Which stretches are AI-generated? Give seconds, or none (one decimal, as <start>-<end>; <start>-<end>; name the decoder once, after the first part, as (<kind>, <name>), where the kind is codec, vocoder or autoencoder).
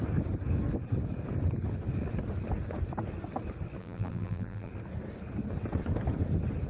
3.8-4.7 (vocoder, BigVGAN v2)